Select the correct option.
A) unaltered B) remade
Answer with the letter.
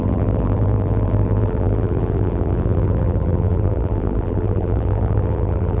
B